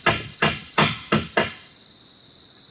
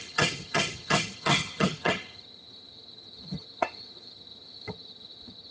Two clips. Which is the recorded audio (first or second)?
first